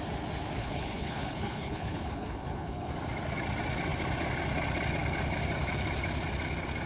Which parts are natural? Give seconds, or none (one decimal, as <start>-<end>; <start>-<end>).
0.0-0.6; 2.9-6.8